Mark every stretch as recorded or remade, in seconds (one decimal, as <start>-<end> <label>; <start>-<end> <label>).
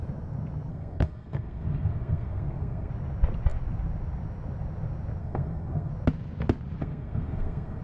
0.0-0.7 recorded; 0.7-2.9 remade; 2.9-5.2 recorded; 5.2-5.9 remade; 5.9-6.8 recorded; 6.8-7.8 remade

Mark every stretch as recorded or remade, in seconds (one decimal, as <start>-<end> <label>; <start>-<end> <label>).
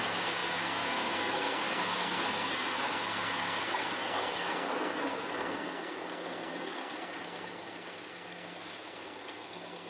0.0-9.9 remade